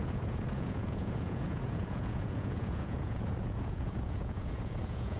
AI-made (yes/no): yes